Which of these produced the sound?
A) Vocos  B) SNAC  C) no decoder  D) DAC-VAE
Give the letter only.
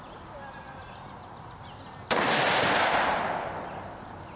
C